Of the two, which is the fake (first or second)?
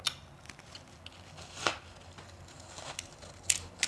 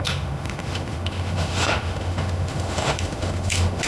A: second